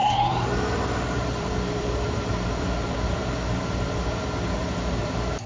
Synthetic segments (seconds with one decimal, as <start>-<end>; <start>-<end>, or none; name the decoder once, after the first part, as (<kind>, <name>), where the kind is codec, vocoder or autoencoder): 0.0-3.3 (vocoder, BigVGAN v2)